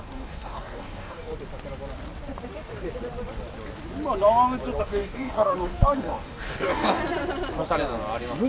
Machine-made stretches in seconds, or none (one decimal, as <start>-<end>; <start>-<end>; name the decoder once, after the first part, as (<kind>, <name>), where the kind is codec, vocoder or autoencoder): 0.0-1.3 (codec, DAC); 4.8-7.0